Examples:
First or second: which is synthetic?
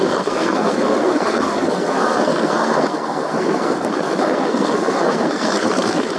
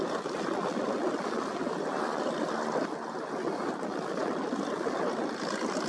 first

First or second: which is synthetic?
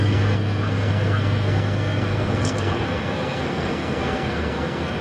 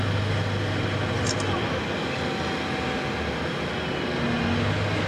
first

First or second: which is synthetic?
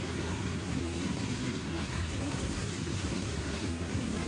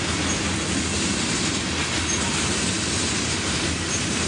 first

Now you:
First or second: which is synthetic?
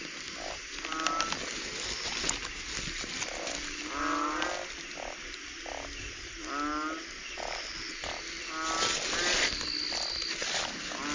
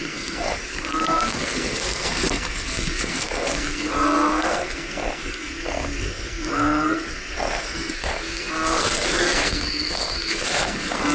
second